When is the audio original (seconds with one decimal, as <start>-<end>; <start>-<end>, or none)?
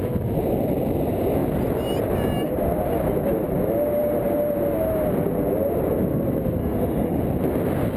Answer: 0.0-6.6; 7.2-8.0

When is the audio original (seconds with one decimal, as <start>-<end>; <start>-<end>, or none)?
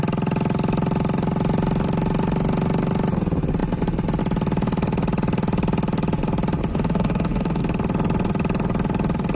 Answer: 0.0-6.7; 7.6-9.4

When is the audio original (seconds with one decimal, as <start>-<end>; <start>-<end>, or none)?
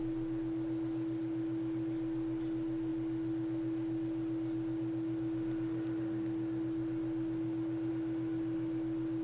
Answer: 0.0-9.2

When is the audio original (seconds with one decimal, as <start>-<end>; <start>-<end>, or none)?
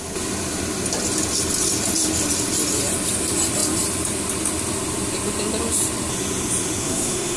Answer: 0.0-6.8